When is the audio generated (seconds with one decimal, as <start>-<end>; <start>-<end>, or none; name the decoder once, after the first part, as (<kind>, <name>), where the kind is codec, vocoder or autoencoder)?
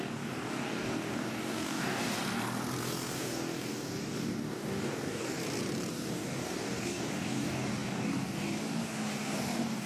0.0-2.2 (codec, DAC); 2.8-5.4; 5.9-9.9